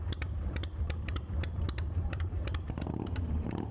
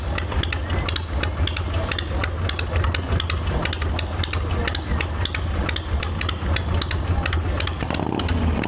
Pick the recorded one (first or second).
second